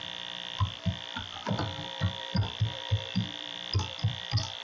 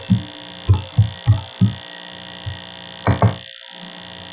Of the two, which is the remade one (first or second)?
first